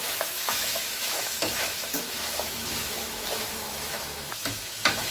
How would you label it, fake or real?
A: fake